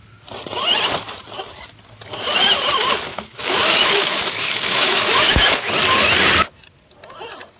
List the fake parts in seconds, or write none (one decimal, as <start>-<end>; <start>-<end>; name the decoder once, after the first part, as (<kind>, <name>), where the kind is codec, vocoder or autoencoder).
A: 3.1-5.7 (autoencoder, DAC-VAE)